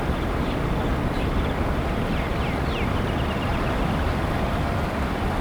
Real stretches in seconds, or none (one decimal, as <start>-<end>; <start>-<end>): 0.0-0.9; 2.0-3.5